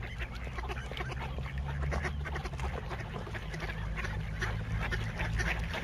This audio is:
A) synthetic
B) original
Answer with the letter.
B